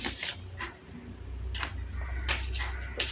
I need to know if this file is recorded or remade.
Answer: recorded